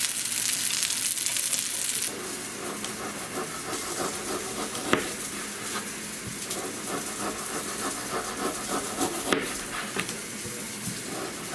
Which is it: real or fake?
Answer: real